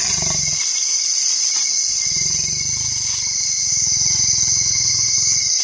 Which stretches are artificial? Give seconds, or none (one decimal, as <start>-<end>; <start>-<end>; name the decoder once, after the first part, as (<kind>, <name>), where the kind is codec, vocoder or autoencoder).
none